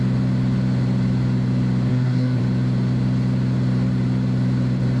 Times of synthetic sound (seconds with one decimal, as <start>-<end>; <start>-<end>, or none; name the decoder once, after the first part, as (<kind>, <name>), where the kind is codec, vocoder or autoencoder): 1.9-2.4 (codec, SNAC)